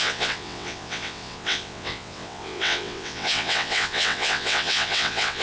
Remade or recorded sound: remade